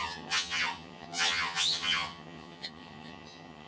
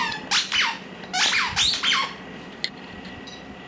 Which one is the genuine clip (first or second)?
second